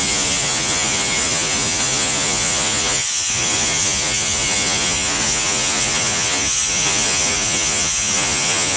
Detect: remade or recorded remade